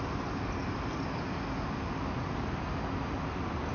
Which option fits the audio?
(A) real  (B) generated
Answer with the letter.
A